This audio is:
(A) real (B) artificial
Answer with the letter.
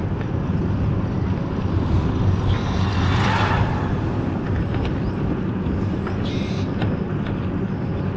A